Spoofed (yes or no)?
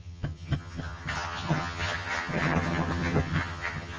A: yes